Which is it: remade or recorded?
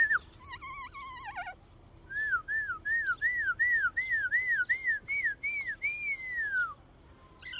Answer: recorded